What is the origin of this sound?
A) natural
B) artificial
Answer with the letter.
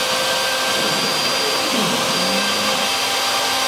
A